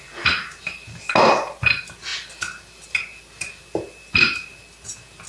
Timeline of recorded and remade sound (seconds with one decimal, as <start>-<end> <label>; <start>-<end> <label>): 0.0-5.3 recorded